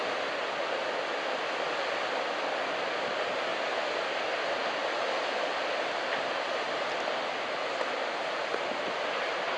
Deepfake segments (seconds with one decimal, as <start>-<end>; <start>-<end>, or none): none